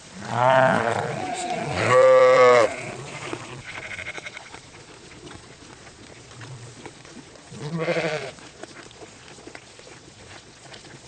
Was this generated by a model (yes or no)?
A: yes